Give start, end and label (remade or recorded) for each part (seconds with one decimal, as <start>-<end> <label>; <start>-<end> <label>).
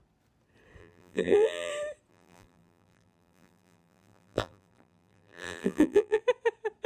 0.0-0.8 recorded; 0.8-1.7 remade; 1.7-2.1 recorded; 2.1-6.2 remade; 6.2-6.9 recorded